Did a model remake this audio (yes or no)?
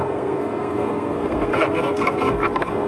yes